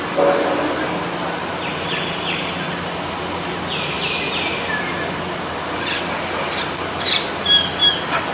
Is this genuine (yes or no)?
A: yes